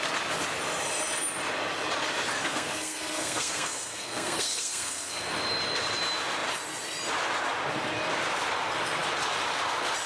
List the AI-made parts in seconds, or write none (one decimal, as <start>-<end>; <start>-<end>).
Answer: 2.3-5.3